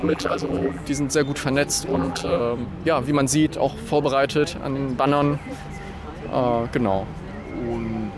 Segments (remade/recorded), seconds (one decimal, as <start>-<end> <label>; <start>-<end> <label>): 0.0-0.8 remade; 0.8-1.9 recorded; 1.9-2.4 remade; 2.4-8.2 recorded